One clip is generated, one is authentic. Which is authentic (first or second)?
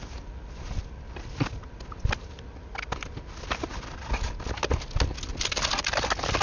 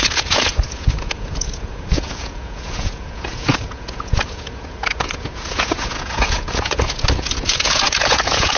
first